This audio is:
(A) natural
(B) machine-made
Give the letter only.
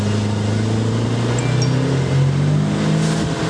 A